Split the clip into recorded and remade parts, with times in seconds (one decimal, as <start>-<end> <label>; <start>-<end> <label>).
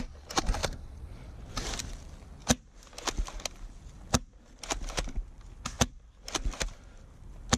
0.0-7.6 recorded